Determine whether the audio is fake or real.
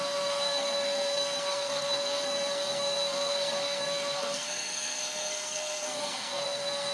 fake